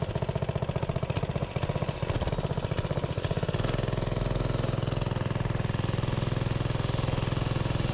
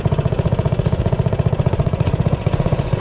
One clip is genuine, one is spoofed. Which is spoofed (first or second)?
second